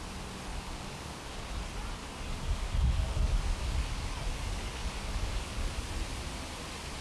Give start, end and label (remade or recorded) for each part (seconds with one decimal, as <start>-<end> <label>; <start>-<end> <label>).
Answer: 0.0-0.5 recorded; 0.5-1.5 remade; 1.5-2.0 recorded; 2.0-5.7 remade; 5.7-7.0 recorded